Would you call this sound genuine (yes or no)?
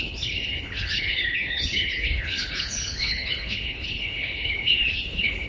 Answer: no